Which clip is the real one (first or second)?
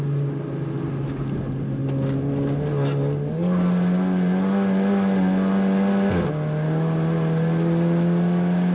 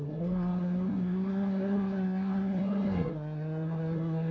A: first